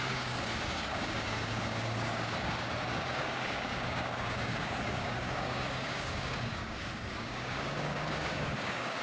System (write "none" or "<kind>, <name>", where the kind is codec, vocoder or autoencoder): codec, DAC